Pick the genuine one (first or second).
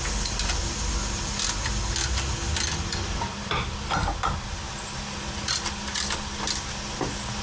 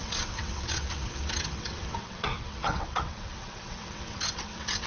first